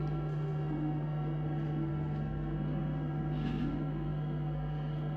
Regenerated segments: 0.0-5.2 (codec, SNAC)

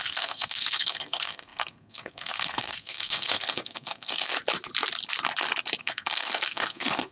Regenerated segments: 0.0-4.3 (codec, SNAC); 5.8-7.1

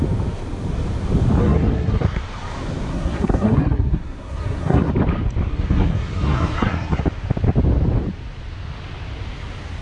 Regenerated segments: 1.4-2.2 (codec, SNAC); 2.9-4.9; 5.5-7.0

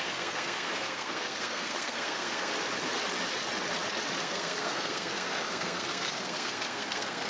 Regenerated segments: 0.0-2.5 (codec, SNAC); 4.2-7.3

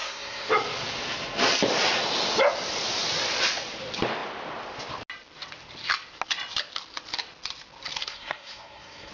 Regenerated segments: 0.0-0.5 (codec, SNAC); 8.0-9.1